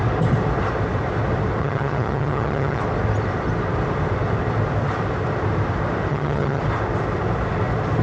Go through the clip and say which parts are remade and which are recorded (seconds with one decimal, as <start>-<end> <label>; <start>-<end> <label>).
0.0-1.6 recorded; 1.6-2.8 remade; 2.8-6.1 recorded; 6.1-6.6 remade; 6.6-8.0 recorded